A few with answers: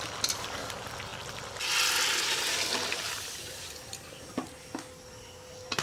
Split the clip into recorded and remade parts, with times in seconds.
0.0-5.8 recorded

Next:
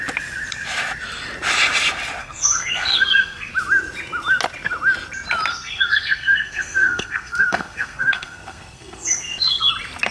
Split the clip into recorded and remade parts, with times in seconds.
0.0-2.2 recorded; 2.2-3.5 remade; 3.5-5.5 recorded; 5.5-9.7 remade; 9.7-10.1 recorded

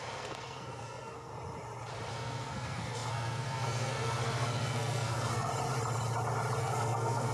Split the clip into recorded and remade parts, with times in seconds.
0.0-1.3 remade; 1.3-2.1 recorded; 2.1-5.5 remade; 5.5-6.6 recorded; 6.6-7.3 remade

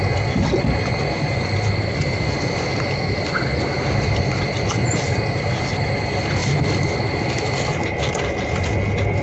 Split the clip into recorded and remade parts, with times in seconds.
0.0-9.2 recorded

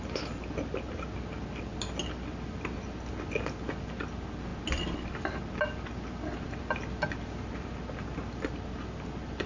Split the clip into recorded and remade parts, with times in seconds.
0.0-9.5 recorded

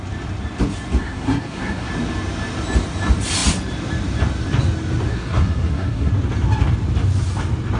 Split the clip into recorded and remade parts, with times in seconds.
0.0-1.0 recorded; 1.0-1.9 remade; 1.9-5.1 recorded; 5.1-6.1 remade; 6.1-7.8 recorded

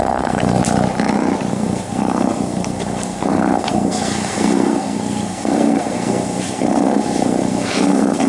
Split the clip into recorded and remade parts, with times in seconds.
0.0-0.6 remade; 0.6-1.5 recorded; 1.5-8.3 remade

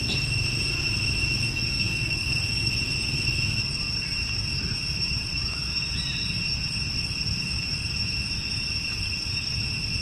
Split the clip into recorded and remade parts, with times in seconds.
0.0-1.5 recorded; 1.5-2.7 remade; 2.7-10.0 recorded